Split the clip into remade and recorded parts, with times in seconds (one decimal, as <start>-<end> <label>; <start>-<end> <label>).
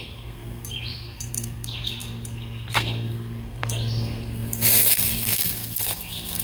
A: 0.0-6.4 remade